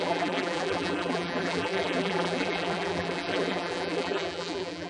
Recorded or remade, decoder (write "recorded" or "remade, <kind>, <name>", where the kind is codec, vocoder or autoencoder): remade, vocoder, BigVGAN v2